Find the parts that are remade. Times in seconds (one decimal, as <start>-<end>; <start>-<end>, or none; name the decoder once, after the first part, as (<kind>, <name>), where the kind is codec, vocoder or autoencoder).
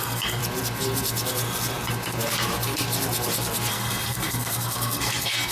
0.0-0.4 (codec, SNAC); 3.7-5.5